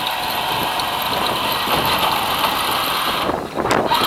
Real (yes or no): yes